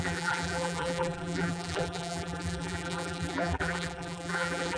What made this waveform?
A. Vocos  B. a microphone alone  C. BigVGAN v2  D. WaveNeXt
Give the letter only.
C